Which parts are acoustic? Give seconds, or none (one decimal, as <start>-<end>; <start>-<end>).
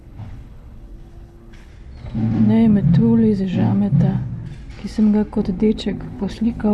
1.7-5.7